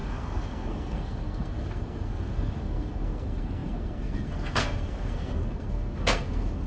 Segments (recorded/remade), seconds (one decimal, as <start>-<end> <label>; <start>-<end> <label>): 0.0-6.7 remade